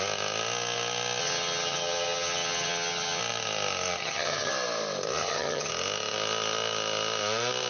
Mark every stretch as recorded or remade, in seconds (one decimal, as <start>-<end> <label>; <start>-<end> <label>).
0.0-1.2 recorded; 1.2-3.2 remade; 3.2-4.0 recorded; 4.0-4.5 remade; 4.5-5.2 recorded; 5.2-5.7 remade; 5.7-7.7 recorded

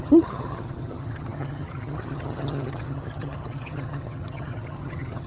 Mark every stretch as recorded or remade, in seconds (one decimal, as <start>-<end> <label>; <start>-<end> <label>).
0.0-5.3 remade